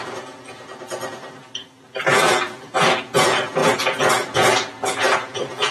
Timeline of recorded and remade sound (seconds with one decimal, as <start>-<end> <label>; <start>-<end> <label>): 0.0-5.7 recorded